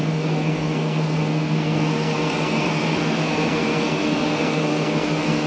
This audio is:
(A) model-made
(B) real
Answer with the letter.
A